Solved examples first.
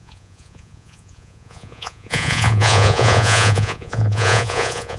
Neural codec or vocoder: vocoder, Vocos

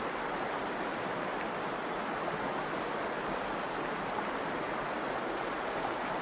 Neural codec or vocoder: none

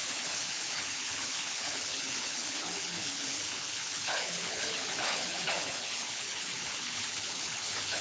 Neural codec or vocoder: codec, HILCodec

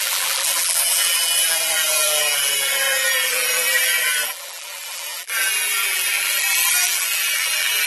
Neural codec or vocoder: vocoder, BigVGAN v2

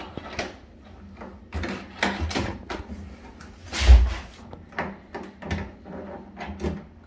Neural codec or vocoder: none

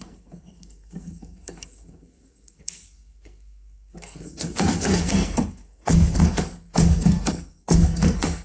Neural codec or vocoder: codec, SNAC